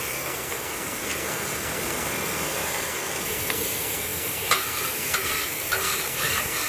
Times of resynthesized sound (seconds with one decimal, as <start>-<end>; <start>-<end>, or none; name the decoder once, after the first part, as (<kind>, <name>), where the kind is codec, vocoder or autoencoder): 0.0-6.7 (codec, SNAC)